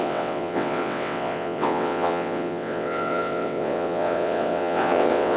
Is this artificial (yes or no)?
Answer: yes